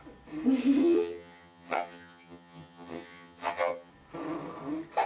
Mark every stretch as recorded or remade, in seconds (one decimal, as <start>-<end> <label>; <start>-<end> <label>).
0.0-0.8 recorded; 0.8-3.9 remade; 3.9-5.1 recorded